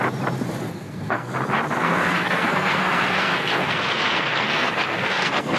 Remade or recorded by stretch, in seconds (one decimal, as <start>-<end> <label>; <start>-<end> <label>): 0.0-0.7 recorded; 0.7-1.3 remade; 1.3-1.8 recorded; 1.8-5.6 remade